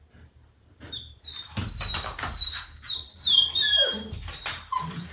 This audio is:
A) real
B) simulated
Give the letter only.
B